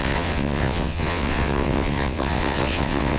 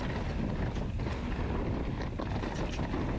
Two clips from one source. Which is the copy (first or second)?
first